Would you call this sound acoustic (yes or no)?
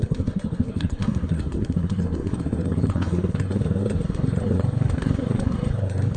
no